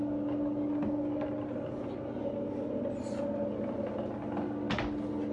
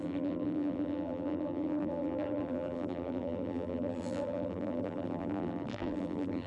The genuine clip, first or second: first